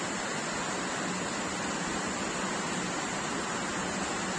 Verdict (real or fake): real